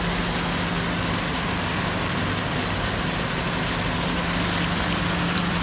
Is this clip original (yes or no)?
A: yes